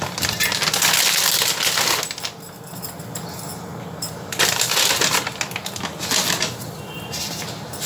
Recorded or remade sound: recorded